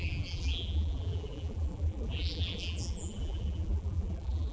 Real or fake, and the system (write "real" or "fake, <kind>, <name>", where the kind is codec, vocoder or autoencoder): fake, vocoder, BigVGAN v2